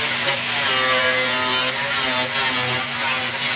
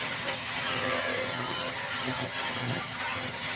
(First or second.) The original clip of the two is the first